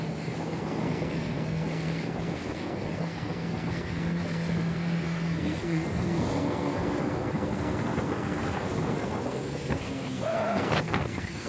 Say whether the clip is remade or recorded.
remade